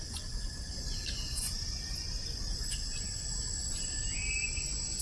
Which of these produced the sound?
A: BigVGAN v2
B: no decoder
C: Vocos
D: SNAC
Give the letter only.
C